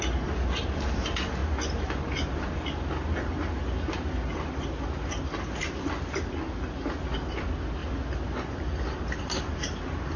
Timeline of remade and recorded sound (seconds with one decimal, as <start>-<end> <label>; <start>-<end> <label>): 0.0-10.2 recorded